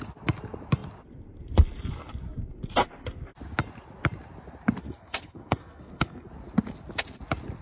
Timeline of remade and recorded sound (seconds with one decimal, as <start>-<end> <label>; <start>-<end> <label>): 0.0-4.8 recorded; 4.8-6.3 remade; 6.3-7.6 recorded